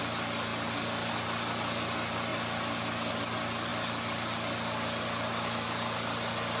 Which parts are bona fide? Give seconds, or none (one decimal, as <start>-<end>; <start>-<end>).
0.0-6.6